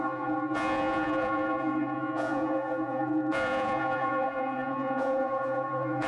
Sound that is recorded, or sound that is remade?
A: remade